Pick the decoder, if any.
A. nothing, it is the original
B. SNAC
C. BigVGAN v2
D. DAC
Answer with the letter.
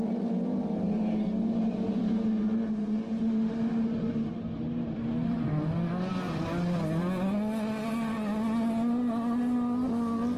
A